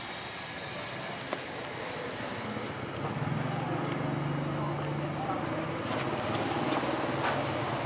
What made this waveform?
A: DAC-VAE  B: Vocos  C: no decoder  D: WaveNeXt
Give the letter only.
C